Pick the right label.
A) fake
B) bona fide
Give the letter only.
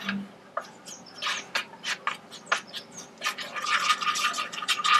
B